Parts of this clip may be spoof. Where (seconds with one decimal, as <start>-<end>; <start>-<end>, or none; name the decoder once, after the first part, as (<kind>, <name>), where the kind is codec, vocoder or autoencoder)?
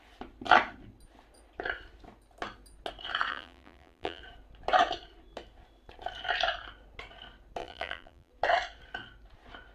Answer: 3.3-4.2 (vocoder, BigVGAN v2); 7.6-8.3